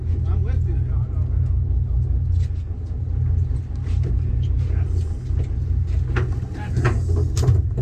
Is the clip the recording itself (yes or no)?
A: yes